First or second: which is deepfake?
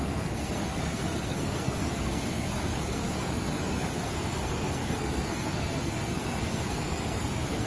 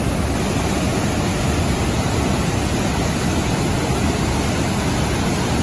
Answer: first